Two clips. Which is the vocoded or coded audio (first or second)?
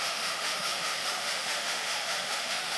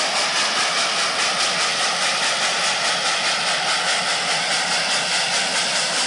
first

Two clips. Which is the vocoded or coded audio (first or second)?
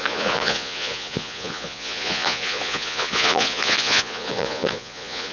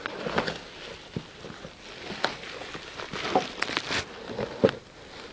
first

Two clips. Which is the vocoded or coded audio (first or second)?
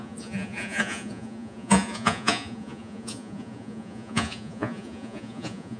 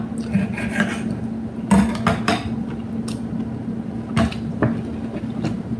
first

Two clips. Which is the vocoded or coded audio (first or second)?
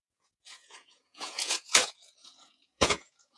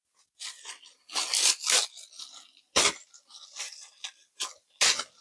first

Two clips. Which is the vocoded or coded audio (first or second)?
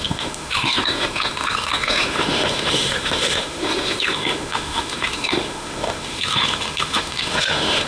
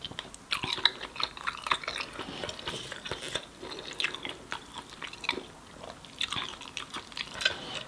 first